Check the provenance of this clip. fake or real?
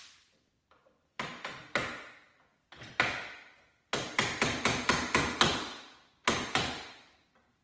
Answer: real